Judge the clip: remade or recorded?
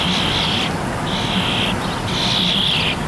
recorded